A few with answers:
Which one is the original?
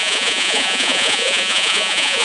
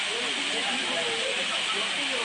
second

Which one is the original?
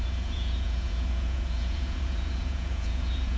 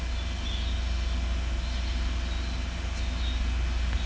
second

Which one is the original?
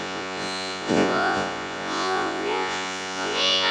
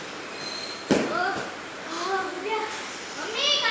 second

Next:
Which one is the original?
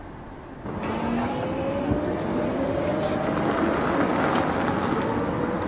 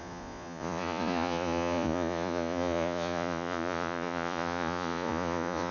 first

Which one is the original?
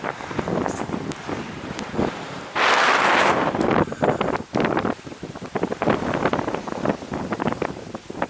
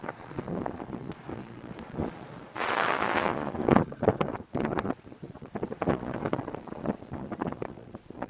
first